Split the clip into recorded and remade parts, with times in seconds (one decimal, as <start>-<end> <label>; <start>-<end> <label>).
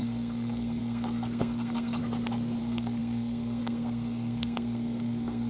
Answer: 0.0-2.0 remade; 2.0-2.6 recorded; 2.6-5.5 remade